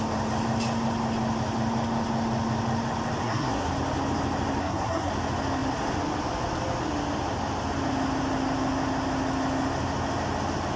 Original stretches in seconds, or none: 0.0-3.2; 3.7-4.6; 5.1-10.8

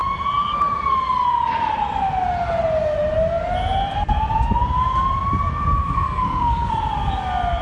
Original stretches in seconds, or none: 0.0-5.8; 6.7-7.6

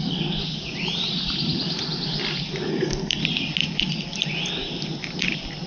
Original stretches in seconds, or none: 0.4-2.7; 3.2-5.7

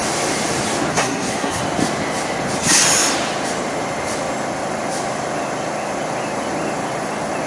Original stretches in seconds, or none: 0.0-0.9; 1.6-7.5

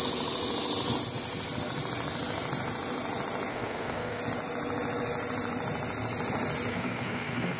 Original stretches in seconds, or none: 0.0-3.5; 4.2-6.7

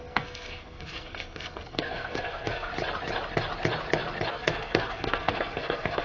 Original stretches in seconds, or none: 2.7-4.3

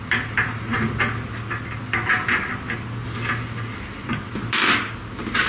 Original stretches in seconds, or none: 0.0-5.5